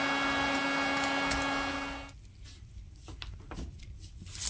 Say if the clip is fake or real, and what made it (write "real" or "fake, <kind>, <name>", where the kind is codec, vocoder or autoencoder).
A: real